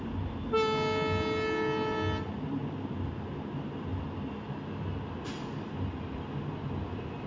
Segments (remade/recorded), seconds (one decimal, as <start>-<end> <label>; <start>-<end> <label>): 0.0-7.3 recorded